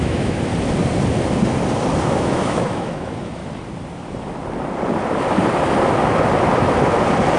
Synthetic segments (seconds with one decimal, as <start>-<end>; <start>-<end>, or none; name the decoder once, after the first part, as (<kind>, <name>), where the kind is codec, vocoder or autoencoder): 0.0-0.5 (autoencoder, DAC-VAE); 2.0-3.4